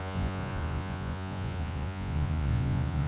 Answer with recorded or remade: remade